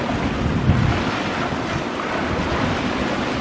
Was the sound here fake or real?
real